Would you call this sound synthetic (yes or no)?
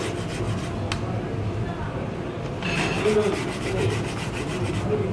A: no